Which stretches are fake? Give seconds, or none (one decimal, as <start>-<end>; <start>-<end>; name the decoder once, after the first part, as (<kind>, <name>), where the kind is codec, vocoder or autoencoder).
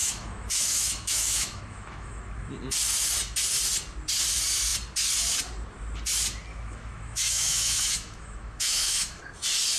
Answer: 0.0-2.5 (autoencoder, DAC-VAE); 6.5-9.2